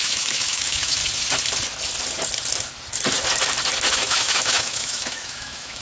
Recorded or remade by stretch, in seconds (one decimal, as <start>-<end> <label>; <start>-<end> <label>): 0.0-1.0 remade; 1.0-3.9 recorded; 3.9-5.8 remade